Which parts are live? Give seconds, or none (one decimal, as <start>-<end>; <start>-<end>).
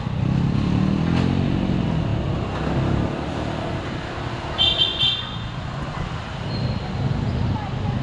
0.0-4.9; 6.1-8.0